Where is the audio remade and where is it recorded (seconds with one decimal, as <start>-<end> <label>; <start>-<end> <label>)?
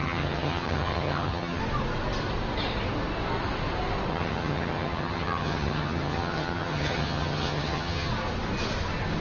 0.0-1.6 remade; 1.6-4.1 recorded; 4.1-8.1 remade; 8.1-9.2 recorded